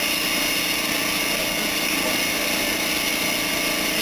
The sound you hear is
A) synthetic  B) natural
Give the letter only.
B